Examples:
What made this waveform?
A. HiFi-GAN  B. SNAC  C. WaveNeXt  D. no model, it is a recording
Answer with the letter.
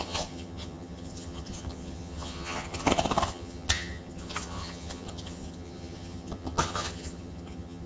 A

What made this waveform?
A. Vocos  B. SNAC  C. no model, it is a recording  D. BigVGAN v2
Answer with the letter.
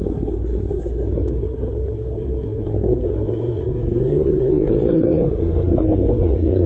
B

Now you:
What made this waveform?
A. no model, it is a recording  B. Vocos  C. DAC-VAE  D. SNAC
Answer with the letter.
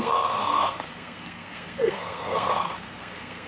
D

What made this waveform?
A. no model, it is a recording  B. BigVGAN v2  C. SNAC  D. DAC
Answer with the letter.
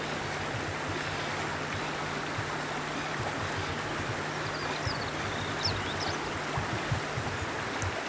A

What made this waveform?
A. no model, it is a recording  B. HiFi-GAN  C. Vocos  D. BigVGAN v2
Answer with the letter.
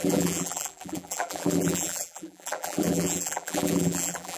D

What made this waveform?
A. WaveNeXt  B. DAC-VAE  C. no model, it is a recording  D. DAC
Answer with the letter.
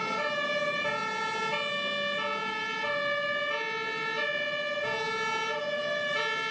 C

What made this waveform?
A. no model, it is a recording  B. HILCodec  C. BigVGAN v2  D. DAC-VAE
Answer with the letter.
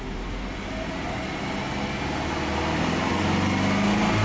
A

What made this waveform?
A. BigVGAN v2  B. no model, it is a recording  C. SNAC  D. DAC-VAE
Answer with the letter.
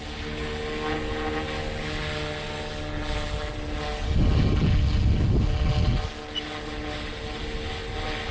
B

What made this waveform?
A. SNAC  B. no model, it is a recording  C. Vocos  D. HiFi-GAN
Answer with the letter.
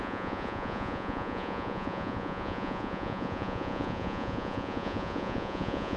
C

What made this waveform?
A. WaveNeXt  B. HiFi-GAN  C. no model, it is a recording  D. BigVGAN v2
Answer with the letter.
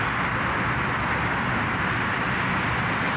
C